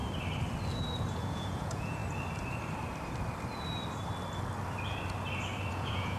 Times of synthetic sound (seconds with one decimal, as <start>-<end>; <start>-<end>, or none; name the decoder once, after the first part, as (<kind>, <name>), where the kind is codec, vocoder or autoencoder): 1.1-2.0 (vocoder, Vocos); 5.7-6.2